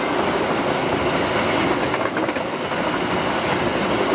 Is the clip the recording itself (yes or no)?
yes